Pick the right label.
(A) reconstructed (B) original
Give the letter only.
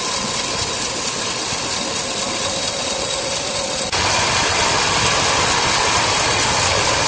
B